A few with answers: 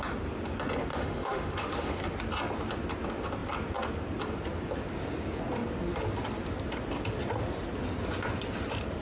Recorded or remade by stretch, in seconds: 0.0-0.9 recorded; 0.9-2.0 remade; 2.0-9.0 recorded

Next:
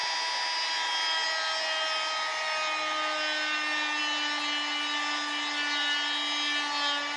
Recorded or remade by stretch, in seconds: 0.0-7.2 recorded

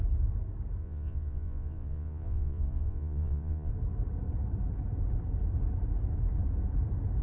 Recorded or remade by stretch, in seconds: 0.0-0.8 recorded; 0.8-3.7 remade; 3.7-7.2 recorded

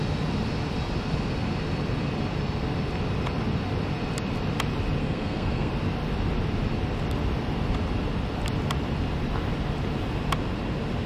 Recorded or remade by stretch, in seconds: 0.0-5.0 recorded; 5.0-5.7 remade; 5.7-11.1 recorded

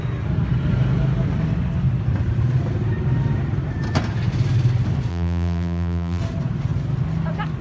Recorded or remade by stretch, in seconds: 0.0-5.1 recorded; 5.1-6.2 remade; 6.2-7.6 recorded